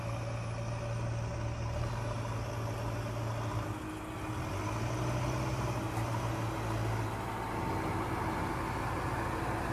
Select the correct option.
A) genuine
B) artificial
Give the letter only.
A